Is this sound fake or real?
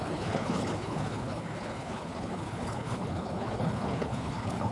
fake